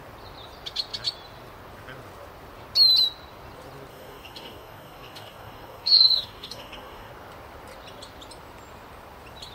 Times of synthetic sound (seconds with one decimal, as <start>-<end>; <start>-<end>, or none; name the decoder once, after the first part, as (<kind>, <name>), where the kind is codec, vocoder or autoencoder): 3.9-7.1 (codec, DAC)